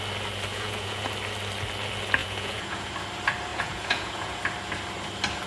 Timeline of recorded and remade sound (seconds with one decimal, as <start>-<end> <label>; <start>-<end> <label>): 0.0-0.5 recorded; 0.5-1.1 remade; 1.1-2.2 recorded; 2.2-2.9 remade; 2.9-3.5 recorded; 3.5-4.4 remade; 4.4-5.5 recorded